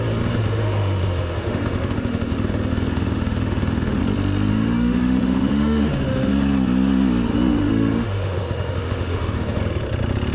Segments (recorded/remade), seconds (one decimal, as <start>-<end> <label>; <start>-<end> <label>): 0.0-0.4 recorded; 0.4-4.0 remade; 4.0-4.5 recorded; 4.5-6.3 remade; 6.3-7.3 recorded; 7.3-9.6 remade; 9.6-10.3 recorded